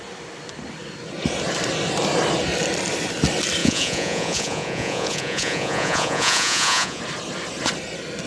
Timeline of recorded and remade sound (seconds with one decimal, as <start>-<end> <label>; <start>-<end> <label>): 0.0-3.6 recorded; 3.6-7.0 remade; 7.0-8.3 recorded